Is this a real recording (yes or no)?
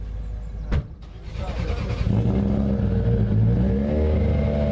yes